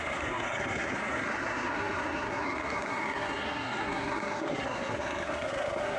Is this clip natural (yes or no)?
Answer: no